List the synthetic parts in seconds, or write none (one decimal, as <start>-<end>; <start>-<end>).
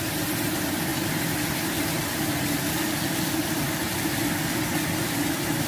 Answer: none